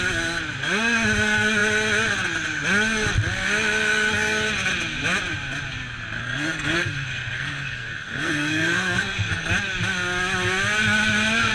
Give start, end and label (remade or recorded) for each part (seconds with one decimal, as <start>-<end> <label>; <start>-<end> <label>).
0.0-6.2 recorded; 6.2-9.5 remade; 9.5-11.5 recorded